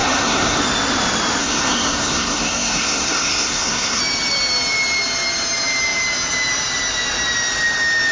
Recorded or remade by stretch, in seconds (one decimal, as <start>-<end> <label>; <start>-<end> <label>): 0.0-0.6 remade; 0.6-1.4 recorded; 1.4-4.0 remade; 4.0-8.1 recorded